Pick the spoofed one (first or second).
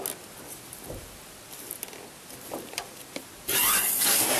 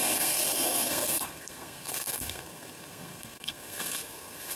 second